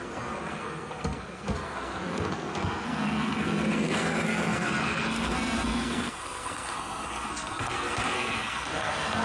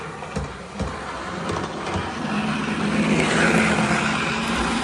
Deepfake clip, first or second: first